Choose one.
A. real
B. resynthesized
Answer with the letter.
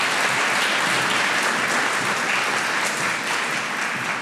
A